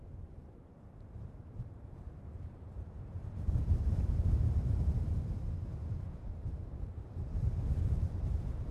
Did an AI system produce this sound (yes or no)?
yes